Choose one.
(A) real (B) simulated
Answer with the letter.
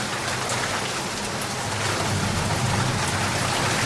A